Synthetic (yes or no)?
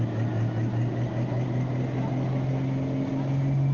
no